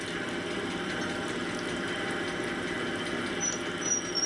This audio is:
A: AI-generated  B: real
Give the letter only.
B